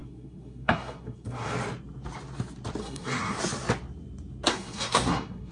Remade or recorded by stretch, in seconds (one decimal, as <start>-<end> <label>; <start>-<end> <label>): 0.0-1.5 remade; 1.5-2.8 recorded; 2.8-3.4 remade; 3.4-4.5 recorded; 4.5-5.5 remade